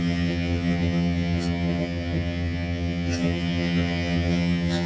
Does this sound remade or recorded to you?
remade